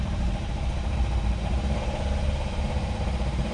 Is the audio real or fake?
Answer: fake